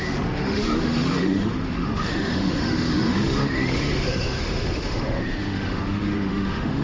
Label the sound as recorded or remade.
remade